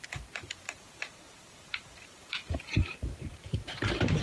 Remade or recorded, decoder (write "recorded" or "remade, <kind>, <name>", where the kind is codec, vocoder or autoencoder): remade, vocoder, BigVGAN v2